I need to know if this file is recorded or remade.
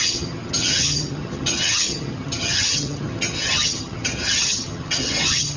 remade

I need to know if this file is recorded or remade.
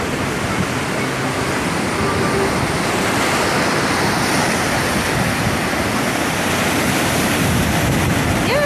recorded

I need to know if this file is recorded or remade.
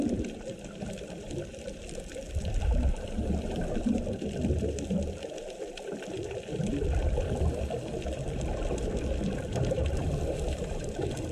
remade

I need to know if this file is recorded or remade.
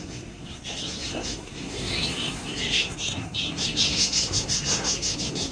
remade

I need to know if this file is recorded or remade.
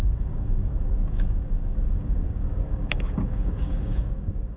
remade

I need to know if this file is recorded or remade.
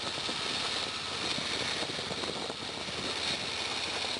recorded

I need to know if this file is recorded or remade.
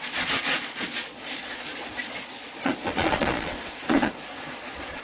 remade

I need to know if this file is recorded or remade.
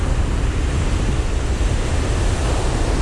recorded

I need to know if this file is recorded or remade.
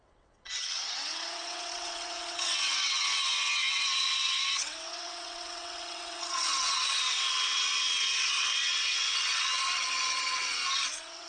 remade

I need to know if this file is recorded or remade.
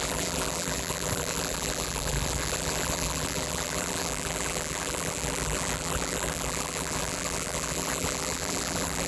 remade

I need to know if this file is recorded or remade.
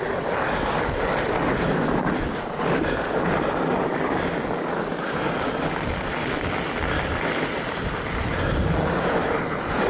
recorded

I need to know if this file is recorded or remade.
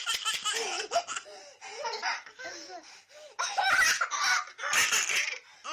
recorded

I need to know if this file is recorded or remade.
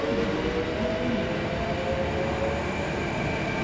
recorded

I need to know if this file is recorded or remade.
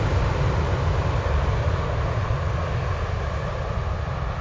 recorded